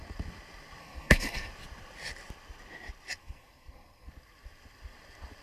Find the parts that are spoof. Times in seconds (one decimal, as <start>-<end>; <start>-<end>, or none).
0.8-1.5; 3.2-4.1